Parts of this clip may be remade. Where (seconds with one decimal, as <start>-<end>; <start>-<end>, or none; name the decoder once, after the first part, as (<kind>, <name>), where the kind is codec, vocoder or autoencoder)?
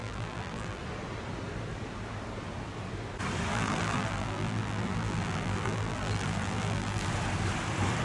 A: 0.0-0.8 (vocoder, BigVGAN v2); 3.5-7.1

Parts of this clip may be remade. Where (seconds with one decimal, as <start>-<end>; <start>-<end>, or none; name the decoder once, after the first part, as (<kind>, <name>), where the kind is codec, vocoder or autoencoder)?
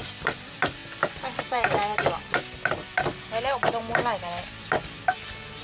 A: 0.0-0.8 (vocoder, BigVGAN v2); 1.4-1.8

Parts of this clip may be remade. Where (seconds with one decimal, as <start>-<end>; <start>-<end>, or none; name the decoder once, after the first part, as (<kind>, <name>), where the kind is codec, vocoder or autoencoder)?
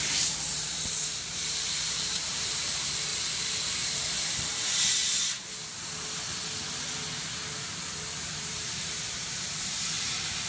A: 0.0-3.1 (vocoder, BigVGAN v2); 3.6-5.0; 7.5-10.5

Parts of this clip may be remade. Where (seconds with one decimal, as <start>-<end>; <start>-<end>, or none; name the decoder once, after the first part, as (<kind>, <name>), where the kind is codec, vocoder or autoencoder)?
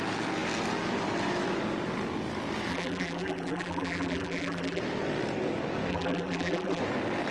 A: 2.7-4.8 (vocoder, BigVGAN v2); 5.9-6.8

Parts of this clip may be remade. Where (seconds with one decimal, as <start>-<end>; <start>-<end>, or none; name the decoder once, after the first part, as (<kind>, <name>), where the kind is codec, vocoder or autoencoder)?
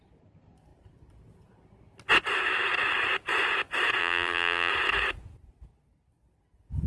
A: 4.0-4.7 (vocoder, BigVGAN v2)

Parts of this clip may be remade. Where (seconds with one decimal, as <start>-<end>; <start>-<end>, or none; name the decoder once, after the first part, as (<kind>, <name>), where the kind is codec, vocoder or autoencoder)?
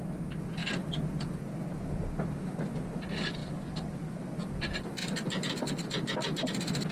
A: 3.4-4.3 (vocoder, BigVGAN v2)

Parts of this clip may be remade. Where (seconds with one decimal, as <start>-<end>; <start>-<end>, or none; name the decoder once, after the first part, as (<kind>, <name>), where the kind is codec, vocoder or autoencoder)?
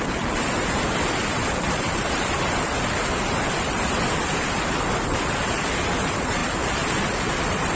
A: none